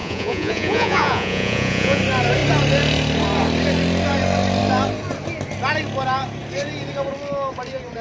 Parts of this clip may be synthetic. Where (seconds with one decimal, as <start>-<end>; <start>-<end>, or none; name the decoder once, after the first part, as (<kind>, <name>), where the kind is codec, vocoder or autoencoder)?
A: 0.0-2.0 (vocoder, Vocos)